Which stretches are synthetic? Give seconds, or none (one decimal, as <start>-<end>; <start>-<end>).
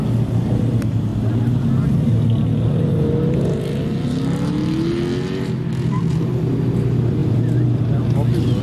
none